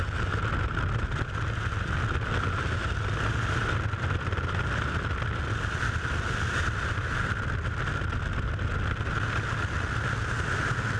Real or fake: real